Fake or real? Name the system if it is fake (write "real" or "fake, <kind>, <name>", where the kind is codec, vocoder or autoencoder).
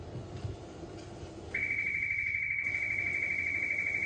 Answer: real